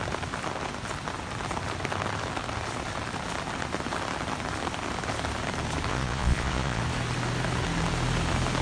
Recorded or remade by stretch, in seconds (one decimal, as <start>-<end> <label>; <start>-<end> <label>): 0.0-5.9 recorded; 5.9-6.8 remade; 6.8-8.6 recorded